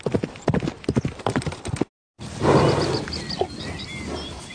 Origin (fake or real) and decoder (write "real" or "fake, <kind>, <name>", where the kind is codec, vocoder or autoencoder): real